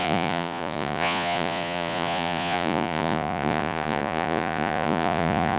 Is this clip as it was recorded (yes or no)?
no